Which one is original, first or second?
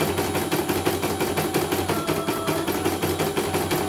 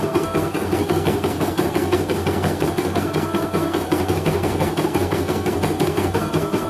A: first